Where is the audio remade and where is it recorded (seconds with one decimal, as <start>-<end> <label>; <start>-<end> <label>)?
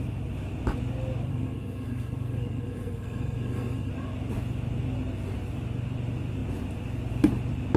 0.0-1.3 recorded; 1.3-3.9 remade; 3.9-7.8 recorded